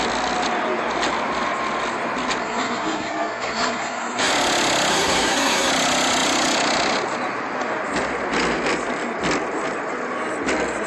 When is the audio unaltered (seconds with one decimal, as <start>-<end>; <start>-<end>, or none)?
0.0-2.4; 4.3-4.9; 5.7-10.9